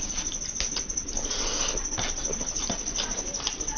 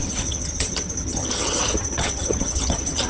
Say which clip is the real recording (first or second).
first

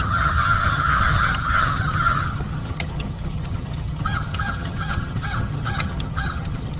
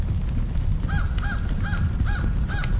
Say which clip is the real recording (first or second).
second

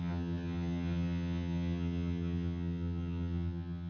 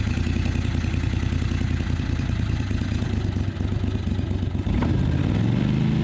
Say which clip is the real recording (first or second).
second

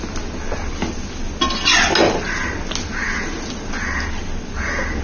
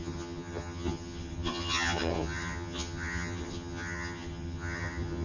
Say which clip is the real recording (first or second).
first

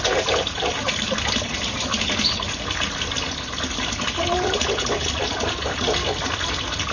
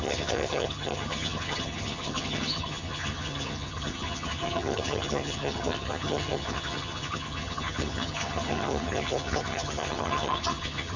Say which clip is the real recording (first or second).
first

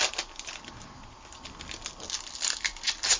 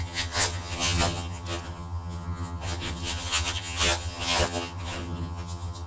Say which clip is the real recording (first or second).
first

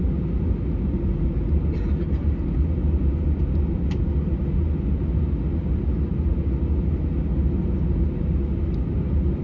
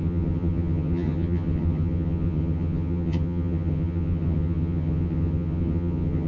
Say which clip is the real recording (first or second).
first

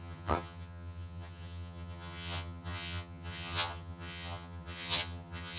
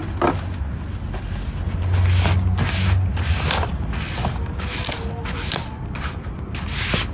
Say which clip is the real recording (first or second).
second